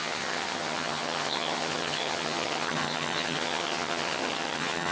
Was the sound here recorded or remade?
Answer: remade